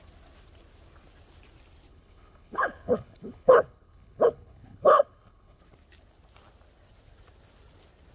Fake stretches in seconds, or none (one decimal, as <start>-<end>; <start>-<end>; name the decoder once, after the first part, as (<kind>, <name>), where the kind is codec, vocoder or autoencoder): 1.9-5.6 (codec, HILCodec)